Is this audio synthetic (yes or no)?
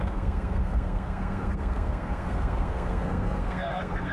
yes